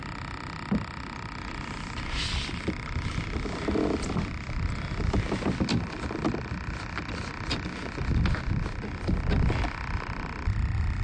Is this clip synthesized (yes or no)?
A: no